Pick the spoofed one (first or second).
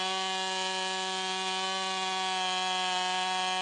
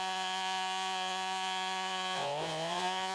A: second